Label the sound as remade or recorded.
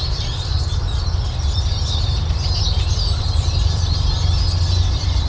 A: recorded